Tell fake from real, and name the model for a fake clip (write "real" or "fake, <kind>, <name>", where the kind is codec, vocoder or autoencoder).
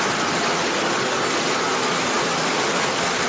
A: real